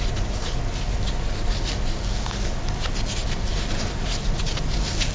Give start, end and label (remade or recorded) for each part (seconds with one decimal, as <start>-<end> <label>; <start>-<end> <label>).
0.0-5.1 recorded